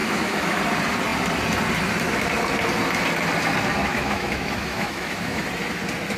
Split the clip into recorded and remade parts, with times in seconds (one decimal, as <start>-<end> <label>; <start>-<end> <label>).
0.0-0.6 remade; 0.6-3.8 recorded; 3.8-5.4 remade; 5.4-6.2 recorded